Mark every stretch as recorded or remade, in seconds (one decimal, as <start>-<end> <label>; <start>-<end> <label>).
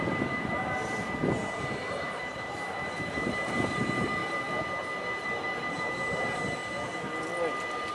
0.0-4.2 remade; 4.2-5.7 recorded; 5.7-6.6 remade; 6.6-7.9 recorded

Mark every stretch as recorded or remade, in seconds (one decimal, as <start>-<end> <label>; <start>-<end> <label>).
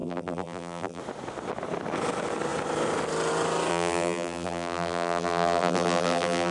0.0-1.0 remade; 1.0-3.7 recorded; 3.7-6.5 remade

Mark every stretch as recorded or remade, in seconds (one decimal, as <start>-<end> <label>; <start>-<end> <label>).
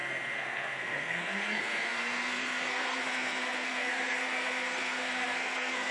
0.0-5.9 remade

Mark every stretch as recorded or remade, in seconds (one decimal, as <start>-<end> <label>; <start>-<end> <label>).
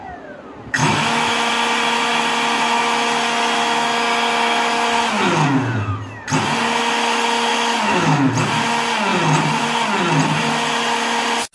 0.0-0.8 recorded; 0.8-1.5 remade; 1.5-7.5 recorded; 7.5-8.3 remade; 8.3-11.5 recorded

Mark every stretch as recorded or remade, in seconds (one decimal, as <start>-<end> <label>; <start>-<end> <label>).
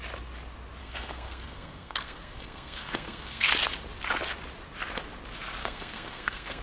0.0-0.8 recorded; 0.8-3.5 remade; 3.5-5.6 recorded; 5.6-6.6 remade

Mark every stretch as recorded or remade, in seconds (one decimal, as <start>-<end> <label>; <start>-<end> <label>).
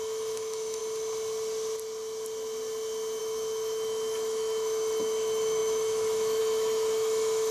0.0-0.8 remade; 0.8-3.2 recorded; 3.2-7.5 remade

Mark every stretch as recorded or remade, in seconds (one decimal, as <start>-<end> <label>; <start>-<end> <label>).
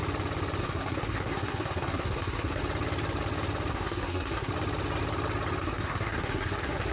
0.0-0.6 recorded; 0.6-2.6 remade; 2.6-3.7 recorded; 3.7-4.5 remade; 4.5-5.6 recorded; 5.6-6.9 remade